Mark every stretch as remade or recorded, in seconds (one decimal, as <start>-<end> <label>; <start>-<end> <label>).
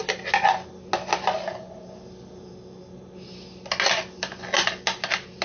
0.0-5.4 recorded